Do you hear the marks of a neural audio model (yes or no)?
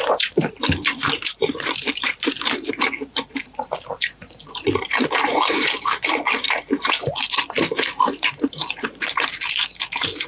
yes